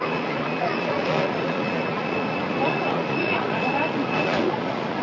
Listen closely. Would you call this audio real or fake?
fake